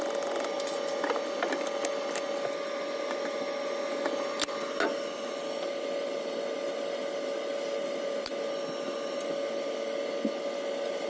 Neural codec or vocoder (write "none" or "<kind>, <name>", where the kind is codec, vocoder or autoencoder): none